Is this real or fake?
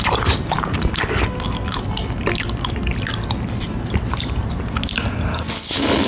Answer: real